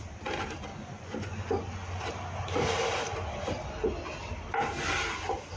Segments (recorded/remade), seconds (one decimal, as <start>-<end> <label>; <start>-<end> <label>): 0.0-0.7 recorded; 0.7-1.4 remade; 1.4-5.6 recorded